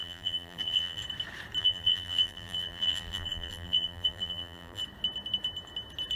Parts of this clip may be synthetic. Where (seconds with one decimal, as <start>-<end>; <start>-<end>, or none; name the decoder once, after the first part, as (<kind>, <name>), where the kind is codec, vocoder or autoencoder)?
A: 0.0-1.0 (vocoder, BigVGAN v2); 1.6-4.8